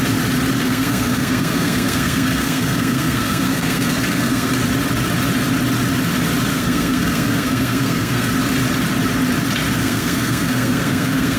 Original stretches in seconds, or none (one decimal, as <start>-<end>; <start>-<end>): 0.0-0.6; 4.5-6.5; 8.3-9.8